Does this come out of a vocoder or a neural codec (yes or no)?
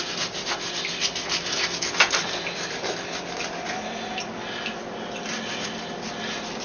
no